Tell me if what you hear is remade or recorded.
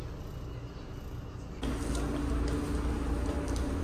recorded